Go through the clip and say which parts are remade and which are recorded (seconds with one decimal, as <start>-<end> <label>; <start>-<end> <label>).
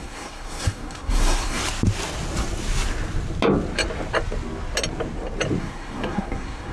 0.0-1.6 remade; 1.6-5.6 recorded; 5.6-6.7 remade